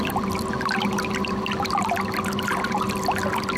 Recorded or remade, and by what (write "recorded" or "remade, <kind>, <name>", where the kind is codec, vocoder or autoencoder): recorded